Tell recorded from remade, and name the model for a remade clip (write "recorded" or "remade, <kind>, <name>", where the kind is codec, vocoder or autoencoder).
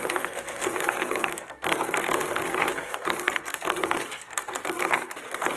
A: remade, codec, SNAC